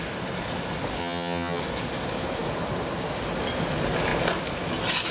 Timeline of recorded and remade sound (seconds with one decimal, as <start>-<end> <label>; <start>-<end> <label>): 0.0-1.0 recorded; 1.0-1.6 remade; 1.6-5.1 recorded